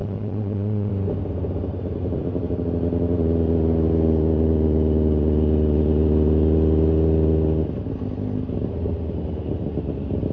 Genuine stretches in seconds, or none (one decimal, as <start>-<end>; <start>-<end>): 0.9-10.3